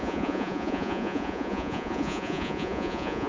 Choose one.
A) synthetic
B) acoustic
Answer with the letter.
A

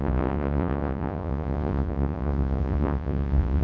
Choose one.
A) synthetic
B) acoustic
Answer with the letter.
A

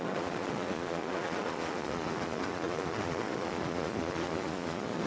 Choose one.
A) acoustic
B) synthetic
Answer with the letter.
B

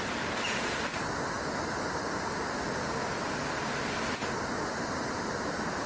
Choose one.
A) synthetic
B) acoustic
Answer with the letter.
B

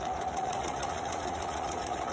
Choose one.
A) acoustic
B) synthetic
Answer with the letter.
B